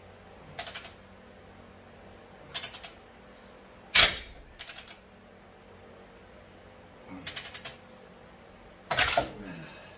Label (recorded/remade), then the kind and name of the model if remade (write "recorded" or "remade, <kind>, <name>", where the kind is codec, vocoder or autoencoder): recorded